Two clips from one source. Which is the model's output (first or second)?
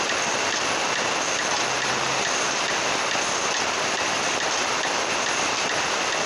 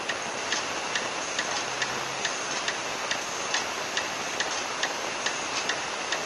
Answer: first